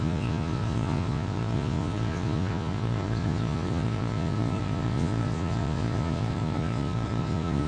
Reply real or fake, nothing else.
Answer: fake